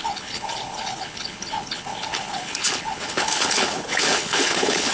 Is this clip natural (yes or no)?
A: no